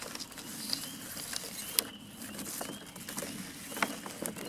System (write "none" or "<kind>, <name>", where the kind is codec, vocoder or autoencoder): none